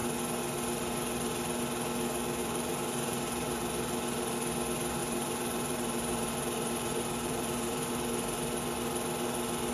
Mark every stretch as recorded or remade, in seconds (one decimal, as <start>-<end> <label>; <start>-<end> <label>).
0.0-2.4 recorded; 2.4-3.7 remade; 3.7-5.0 recorded; 5.0-7.9 remade; 7.9-9.7 recorded

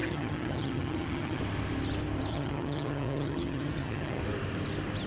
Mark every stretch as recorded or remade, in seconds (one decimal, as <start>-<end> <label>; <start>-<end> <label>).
0.0-1.4 remade; 1.4-2.3 recorded; 2.3-4.2 remade; 4.2-5.1 recorded

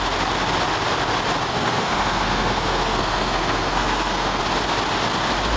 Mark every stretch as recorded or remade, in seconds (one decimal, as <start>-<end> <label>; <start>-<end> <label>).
0.0-1.5 recorded; 1.5-4.4 remade; 4.4-5.6 recorded

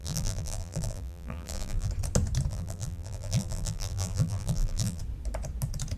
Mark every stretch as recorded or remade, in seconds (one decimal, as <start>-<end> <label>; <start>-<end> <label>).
0.0-1.9 remade; 1.9-2.5 recorded; 2.5-5.0 remade; 5.0-6.0 recorded